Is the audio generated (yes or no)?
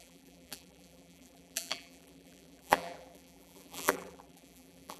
yes